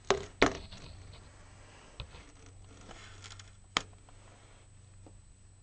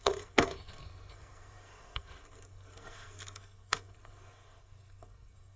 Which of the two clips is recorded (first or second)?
first